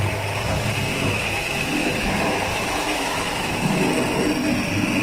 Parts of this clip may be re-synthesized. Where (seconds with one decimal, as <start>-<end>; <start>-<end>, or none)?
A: 0.9-3.7